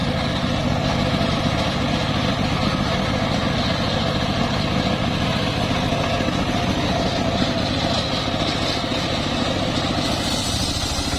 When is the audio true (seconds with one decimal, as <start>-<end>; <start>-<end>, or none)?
0.0-11.2